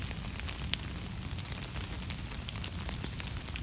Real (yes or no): yes